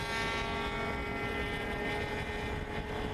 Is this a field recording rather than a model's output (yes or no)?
yes